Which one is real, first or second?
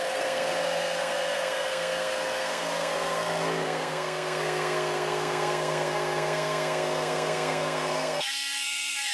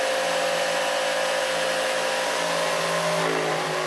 second